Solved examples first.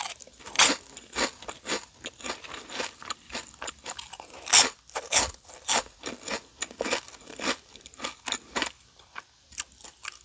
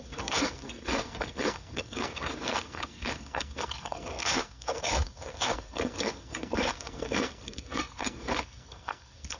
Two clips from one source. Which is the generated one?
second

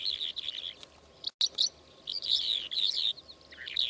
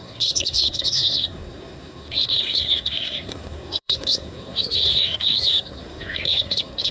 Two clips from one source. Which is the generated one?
second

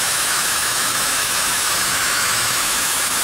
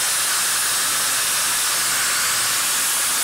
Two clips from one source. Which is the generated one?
first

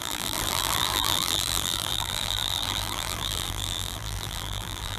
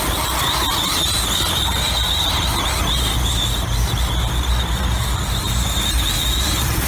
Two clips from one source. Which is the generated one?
first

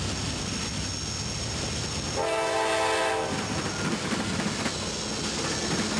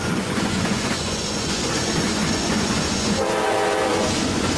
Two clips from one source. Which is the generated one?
second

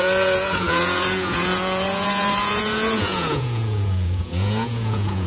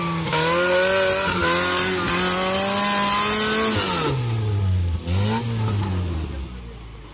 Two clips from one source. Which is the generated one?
first